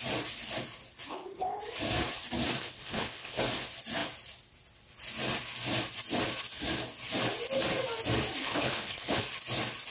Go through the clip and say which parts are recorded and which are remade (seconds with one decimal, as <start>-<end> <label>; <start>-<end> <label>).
0.0-1.1 recorded; 1.1-1.6 remade; 1.6-2.6 recorded; 2.6-3.4 remade; 3.4-8.4 recorded; 8.4-9.2 remade; 9.2-9.9 recorded